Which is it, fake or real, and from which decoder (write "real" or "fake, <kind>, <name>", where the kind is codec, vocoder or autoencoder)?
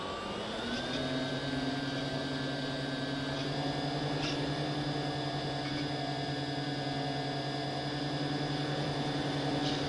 real